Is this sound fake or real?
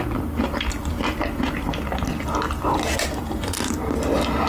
real